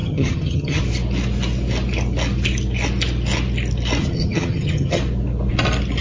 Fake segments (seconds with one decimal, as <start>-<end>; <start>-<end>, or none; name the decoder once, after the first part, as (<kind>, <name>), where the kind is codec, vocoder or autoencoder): 0.0-0.8 (vocoder, HiFi-GAN); 4.0-5.0